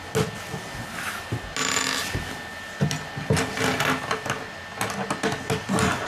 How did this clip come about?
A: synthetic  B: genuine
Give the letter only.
B